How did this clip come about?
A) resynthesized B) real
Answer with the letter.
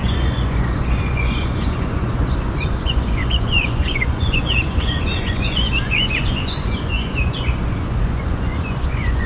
A